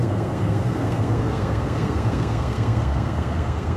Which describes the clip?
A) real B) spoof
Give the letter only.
B